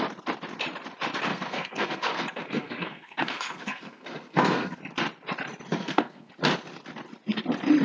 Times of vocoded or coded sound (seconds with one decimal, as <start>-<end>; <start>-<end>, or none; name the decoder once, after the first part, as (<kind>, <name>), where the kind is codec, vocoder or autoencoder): 1.3-4.8 (codec, SNAC); 5.7-6.3